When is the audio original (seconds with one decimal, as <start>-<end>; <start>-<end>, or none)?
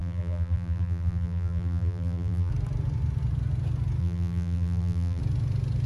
2.5-4.0; 5.2-5.9